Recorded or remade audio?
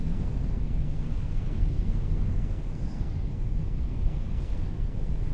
remade